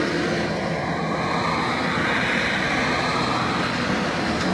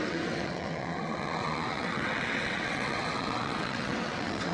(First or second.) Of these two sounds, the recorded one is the first